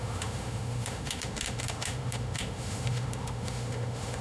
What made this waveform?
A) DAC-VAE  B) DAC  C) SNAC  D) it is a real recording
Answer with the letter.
A